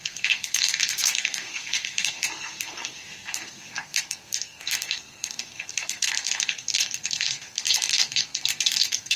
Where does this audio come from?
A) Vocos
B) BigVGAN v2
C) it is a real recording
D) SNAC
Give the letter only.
D